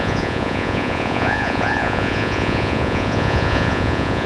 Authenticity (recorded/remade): remade